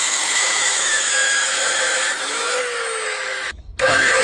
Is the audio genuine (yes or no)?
no